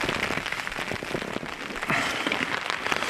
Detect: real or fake real